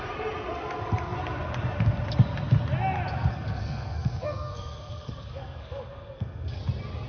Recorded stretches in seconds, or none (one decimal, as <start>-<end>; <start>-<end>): 0.0-3.3; 6.6-7.1